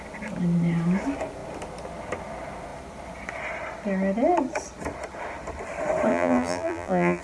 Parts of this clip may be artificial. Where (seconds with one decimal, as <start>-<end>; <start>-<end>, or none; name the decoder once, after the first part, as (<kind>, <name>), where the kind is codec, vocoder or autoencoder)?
6.1-7.2 (vocoder, BigVGAN v2)